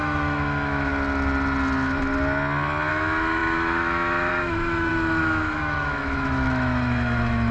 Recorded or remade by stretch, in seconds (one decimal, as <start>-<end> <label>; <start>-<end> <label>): 0.0-0.9 remade; 0.9-2.9 recorded; 2.9-7.5 remade